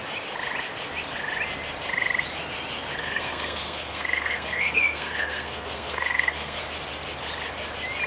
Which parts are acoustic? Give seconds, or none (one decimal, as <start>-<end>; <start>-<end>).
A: 0.0-3.0; 6.6-8.1